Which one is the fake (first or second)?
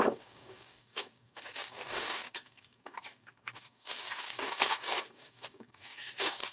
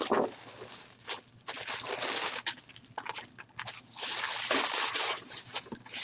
first